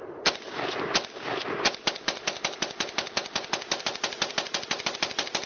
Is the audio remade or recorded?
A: recorded